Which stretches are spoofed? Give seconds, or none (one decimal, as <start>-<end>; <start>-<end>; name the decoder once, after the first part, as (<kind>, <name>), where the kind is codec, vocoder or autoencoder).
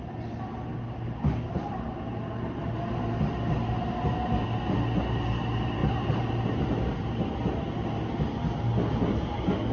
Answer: 0.7-1.5 (codec, DAC)